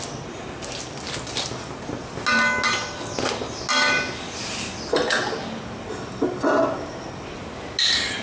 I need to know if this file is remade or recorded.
recorded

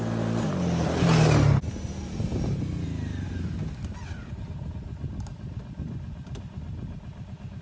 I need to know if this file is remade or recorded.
recorded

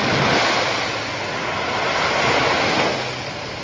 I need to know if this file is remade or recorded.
recorded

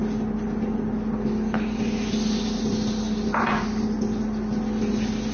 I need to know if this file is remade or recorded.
recorded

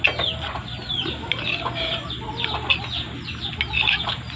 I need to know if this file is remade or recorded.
recorded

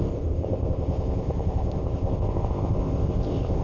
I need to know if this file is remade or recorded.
remade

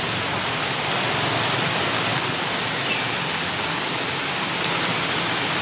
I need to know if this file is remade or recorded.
recorded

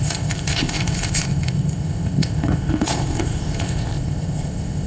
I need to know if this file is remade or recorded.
remade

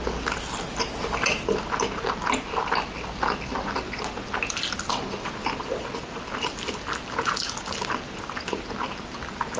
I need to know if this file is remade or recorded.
recorded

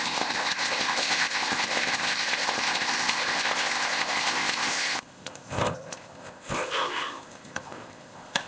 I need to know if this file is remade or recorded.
remade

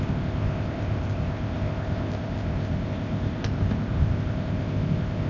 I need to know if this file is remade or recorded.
remade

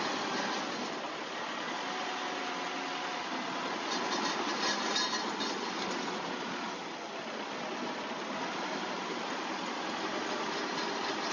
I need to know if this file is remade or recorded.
recorded